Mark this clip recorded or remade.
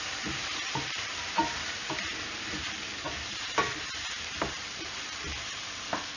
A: remade